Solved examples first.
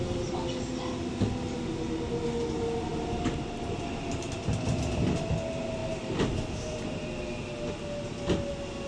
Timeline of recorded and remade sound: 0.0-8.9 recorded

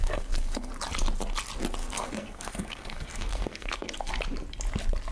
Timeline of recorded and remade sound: 0.0-0.7 remade; 0.7-1.8 recorded; 1.8-4.1 remade; 4.1-5.1 recorded

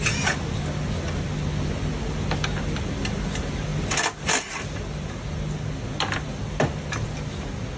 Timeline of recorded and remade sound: 0.0-7.8 recorded

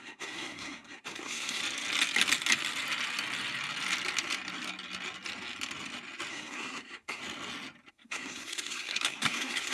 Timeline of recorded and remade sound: 0.0-1.6 remade; 1.6-6.3 recorded; 6.3-7.2 remade; 7.2-7.9 recorded; 7.9-9.7 remade

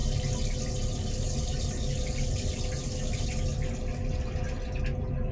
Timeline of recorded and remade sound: 0.0-5.3 recorded

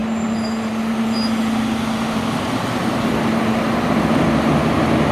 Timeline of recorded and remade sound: 0.0-5.1 recorded